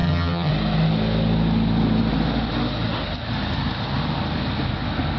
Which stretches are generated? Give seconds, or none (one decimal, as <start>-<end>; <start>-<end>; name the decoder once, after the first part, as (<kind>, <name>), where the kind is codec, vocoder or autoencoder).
0.0-0.5 (vocoder, HiFi-GAN)